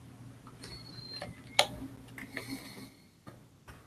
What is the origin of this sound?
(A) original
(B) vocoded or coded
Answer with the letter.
A